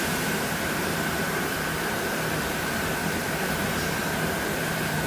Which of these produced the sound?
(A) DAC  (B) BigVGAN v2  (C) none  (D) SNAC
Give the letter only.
B